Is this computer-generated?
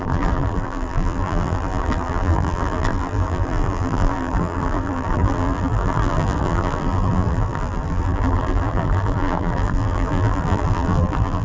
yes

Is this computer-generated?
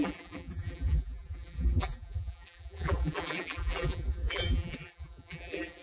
yes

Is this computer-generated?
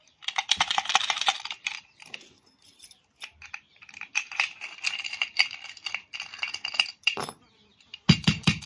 yes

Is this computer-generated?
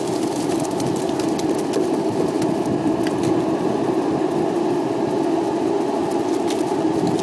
no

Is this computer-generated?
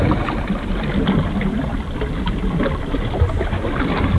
no